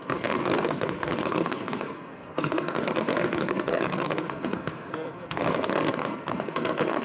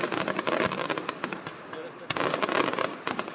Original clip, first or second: second